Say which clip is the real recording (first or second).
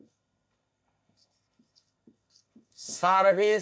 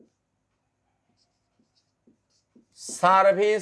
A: second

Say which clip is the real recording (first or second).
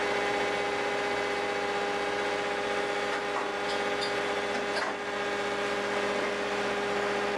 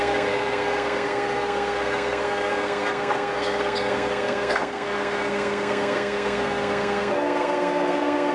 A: first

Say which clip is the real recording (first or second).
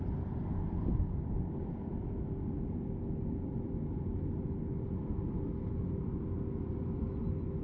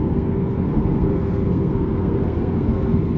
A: first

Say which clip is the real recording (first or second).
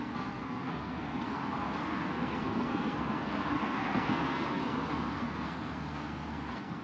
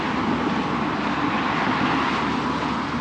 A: second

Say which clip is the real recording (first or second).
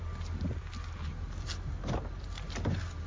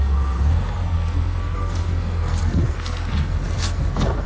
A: first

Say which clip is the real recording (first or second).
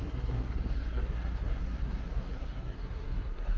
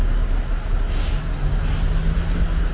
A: second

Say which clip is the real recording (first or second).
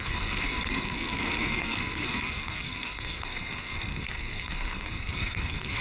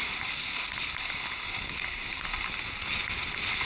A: second